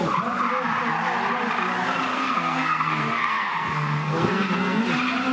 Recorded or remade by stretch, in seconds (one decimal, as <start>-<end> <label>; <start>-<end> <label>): 0.0-2.1 recorded; 2.1-4.8 remade; 4.8-5.3 recorded